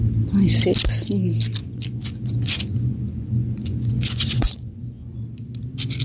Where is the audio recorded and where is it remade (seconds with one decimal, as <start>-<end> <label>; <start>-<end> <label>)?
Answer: 0.0-1.6 recorded; 1.6-5.2 remade; 5.2-6.0 recorded